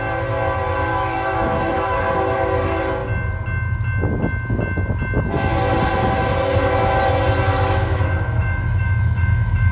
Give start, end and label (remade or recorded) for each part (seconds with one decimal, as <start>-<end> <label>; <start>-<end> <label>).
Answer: 0.0-0.9 recorded; 0.9-2.0 remade; 2.0-7.5 recorded; 7.5-9.7 remade